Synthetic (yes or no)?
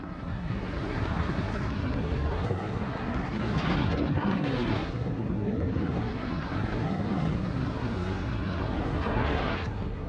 yes